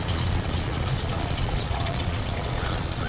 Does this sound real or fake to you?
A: fake